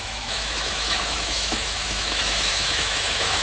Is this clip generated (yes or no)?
yes